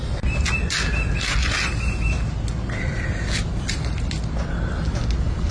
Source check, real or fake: real